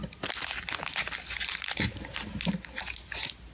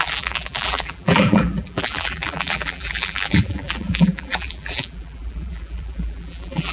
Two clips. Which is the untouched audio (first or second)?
first